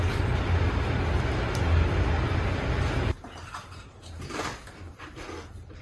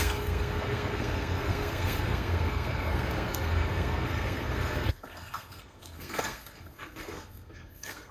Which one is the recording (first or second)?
first